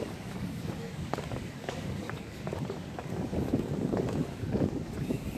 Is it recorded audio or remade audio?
remade